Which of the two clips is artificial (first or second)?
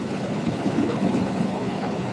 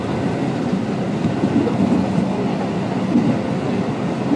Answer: first